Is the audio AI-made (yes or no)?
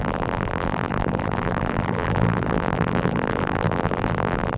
yes